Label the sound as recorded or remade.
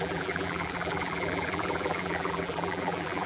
remade